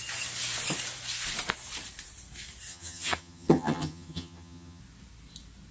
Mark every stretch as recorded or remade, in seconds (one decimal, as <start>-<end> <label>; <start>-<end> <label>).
0.0-2.7 recorded; 2.7-4.8 remade; 4.8-5.7 recorded